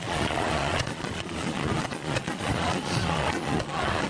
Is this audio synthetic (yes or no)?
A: yes